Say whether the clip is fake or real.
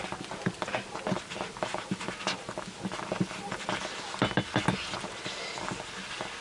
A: real